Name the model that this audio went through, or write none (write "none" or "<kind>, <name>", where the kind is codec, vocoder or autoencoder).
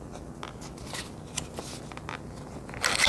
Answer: none